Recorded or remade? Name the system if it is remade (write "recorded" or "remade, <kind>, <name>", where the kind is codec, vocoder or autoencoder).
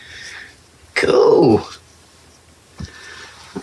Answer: recorded